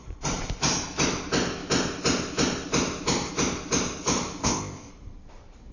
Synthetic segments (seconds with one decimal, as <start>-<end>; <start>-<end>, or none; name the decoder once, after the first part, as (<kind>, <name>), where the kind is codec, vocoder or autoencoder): 4.4-4.9 (codec, ZipCodec)